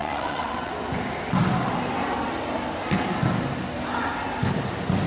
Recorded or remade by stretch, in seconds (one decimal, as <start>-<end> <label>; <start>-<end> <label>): 0.0-0.7 remade; 0.7-5.1 recorded